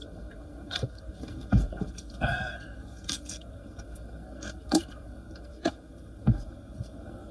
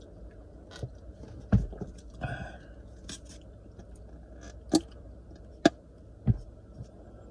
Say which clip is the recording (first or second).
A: second